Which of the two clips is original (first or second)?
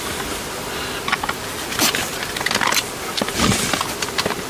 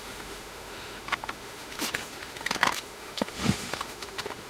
first